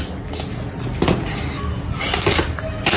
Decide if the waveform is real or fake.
real